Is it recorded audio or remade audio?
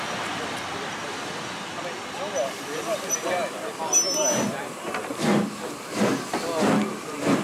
recorded